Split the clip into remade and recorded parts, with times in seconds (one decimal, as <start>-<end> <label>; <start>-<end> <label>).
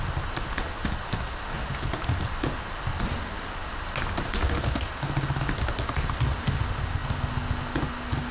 0.0-8.3 recorded